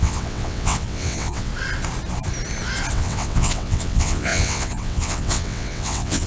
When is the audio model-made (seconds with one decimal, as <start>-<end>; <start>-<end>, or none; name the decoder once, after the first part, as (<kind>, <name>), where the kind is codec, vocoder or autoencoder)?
0.0-1.5 (vocoder, WaveNeXt); 2.9-6.3